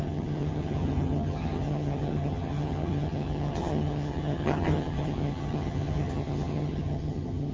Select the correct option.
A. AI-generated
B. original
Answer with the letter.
A